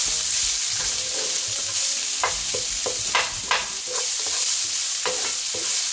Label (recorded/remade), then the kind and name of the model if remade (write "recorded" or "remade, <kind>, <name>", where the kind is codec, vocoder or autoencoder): recorded